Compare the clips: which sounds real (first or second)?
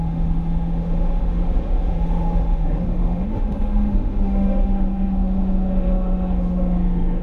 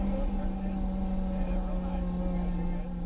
second